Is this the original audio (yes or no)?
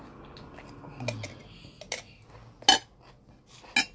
yes